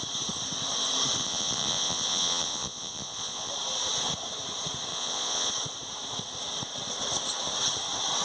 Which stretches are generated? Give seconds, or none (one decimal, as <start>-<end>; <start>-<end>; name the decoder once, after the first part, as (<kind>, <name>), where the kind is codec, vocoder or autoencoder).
1.2-3.5 (vocoder, Vocos); 4.9-5.5